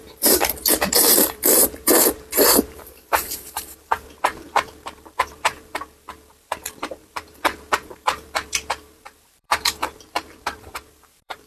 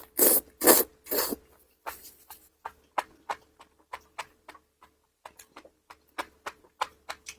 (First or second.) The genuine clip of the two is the second